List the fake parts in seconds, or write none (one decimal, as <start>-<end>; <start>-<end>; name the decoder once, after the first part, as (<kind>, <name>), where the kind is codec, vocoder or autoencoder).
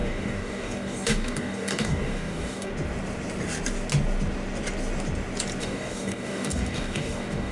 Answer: 0.0-2.7 (codec, DAC); 5.6-7.5